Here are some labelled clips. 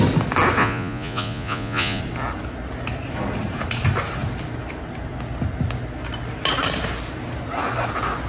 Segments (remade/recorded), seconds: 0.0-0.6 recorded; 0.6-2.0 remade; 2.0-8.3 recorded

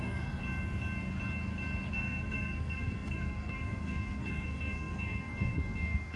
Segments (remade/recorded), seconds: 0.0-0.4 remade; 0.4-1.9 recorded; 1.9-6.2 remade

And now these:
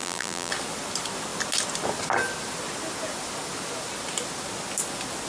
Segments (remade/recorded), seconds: 0.0-0.5 remade; 0.5-5.3 recorded